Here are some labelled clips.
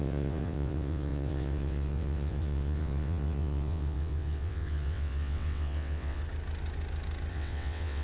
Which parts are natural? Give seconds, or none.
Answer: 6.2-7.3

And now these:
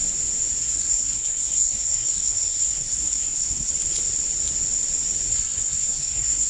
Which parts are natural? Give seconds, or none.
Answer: 0.0-0.6; 3.7-5.3

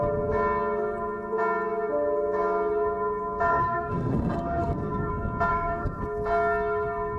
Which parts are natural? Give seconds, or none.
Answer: 0.0-3.5; 5.1-5.5; 6.0-7.2

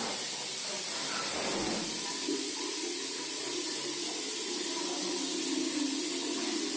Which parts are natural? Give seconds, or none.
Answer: 0.0-6.8